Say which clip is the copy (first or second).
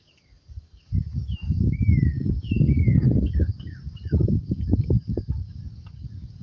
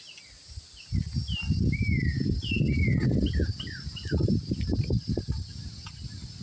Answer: first